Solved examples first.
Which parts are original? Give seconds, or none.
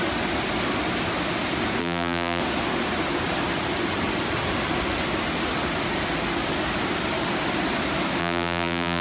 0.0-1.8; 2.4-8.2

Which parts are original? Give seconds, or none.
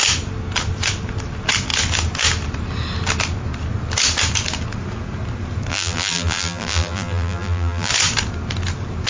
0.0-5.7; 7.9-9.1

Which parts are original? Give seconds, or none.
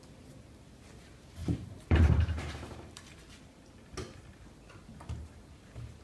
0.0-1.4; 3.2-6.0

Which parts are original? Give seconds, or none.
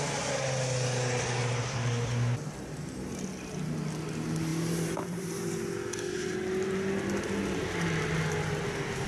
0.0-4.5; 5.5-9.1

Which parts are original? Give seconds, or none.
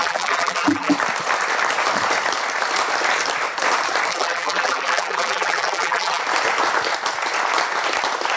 0.9-4.1; 6.2-8.4